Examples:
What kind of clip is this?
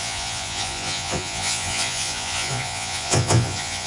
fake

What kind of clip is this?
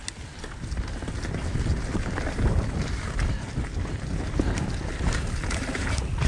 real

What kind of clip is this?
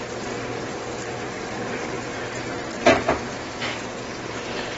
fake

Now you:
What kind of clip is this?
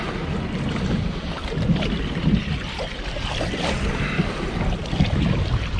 real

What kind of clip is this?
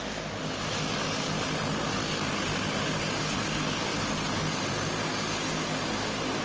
real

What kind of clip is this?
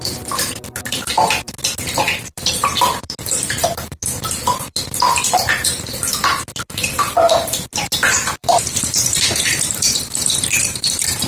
fake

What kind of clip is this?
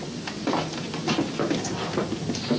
real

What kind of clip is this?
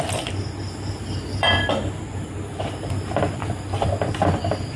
fake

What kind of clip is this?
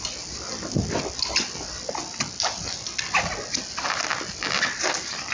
real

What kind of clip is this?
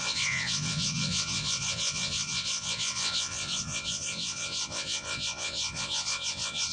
fake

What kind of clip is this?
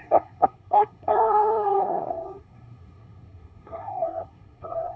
fake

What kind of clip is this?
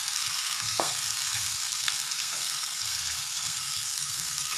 fake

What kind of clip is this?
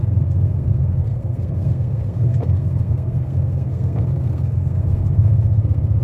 fake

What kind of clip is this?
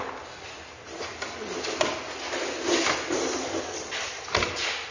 real